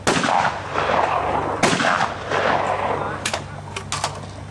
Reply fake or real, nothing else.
real